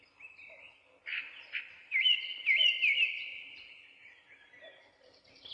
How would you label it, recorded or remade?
remade